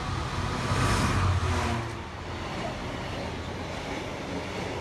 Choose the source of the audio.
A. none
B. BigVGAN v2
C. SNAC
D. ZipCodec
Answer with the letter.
A